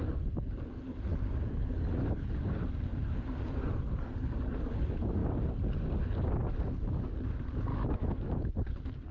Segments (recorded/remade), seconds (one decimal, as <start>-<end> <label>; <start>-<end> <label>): 0.0-7.7 recorded; 7.7-8.5 remade; 8.5-9.1 recorded